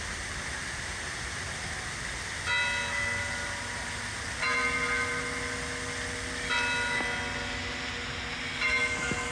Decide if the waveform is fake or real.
real